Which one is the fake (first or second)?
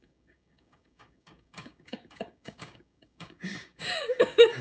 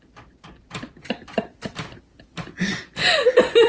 first